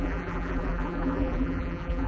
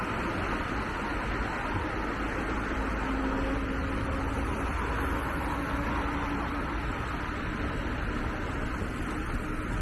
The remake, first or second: first